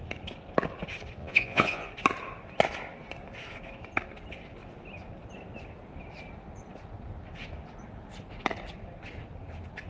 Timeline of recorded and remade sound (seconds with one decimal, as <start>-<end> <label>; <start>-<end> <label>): 0.0-1.2 recorded; 1.2-1.9 remade; 1.9-9.9 recorded